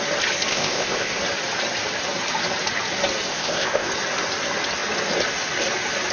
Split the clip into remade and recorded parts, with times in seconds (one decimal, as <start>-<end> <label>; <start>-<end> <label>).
0.0-0.5 recorded; 0.5-1.2 remade; 1.2-3.3 recorded; 3.3-3.9 remade; 3.9-6.1 recorded